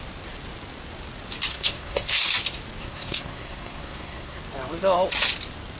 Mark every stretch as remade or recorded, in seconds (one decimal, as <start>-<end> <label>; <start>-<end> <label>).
0.0-1.5 recorded; 1.5-2.3 remade; 2.3-2.8 recorded; 2.8-4.4 remade; 4.4-5.8 recorded